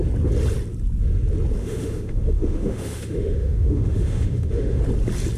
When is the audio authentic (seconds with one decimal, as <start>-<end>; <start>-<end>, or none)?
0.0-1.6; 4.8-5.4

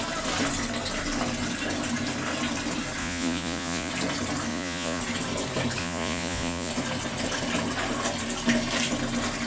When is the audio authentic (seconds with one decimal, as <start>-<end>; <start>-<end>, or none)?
0.0-3.0; 3.9-4.5; 5.0-5.8; 6.7-9.5

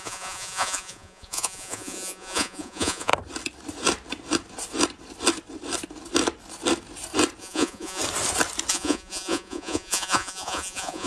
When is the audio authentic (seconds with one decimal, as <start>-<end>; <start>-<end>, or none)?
3.1-7.4; 8.0-8.7

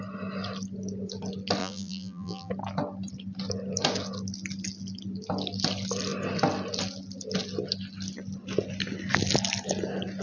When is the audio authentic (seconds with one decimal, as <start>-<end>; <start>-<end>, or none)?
0.0-1.6; 2.5-10.2

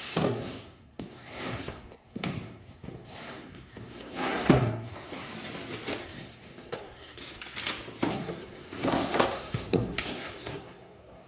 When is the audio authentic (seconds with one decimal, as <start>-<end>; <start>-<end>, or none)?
5.3-6.0; 7.2-8.1

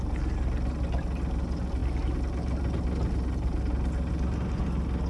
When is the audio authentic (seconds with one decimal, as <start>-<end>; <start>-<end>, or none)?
0.0-5.1

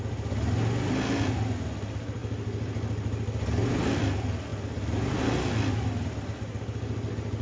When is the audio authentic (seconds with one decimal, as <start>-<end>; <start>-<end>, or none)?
0.0-7.4